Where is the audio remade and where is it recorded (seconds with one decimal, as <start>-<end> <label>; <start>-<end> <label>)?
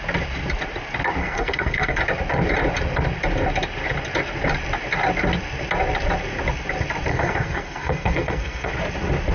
0.0-1.2 recorded; 1.2-2.0 remade; 2.0-7.1 recorded; 7.1-8.7 remade; 8.7-9.3 recorded